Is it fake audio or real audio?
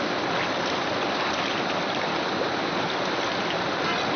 real